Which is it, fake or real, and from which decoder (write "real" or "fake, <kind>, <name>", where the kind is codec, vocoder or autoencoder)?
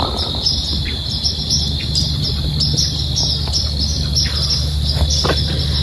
real